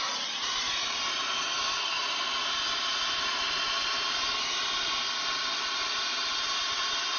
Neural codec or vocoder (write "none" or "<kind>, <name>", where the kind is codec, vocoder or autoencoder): none